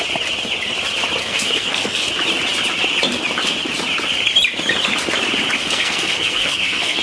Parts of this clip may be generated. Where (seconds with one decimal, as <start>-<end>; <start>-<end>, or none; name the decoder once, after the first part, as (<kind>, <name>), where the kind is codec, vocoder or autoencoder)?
1.2-2.1 (codec, SNAC); 5.6-7.0